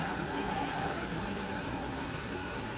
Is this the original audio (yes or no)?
no